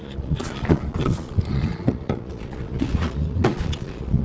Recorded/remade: remade